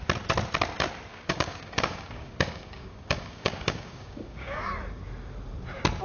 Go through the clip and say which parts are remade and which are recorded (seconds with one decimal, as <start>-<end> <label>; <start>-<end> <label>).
0.0-1.1 recorded; 1.1-4.7 remade; 4.7-6.0 recorded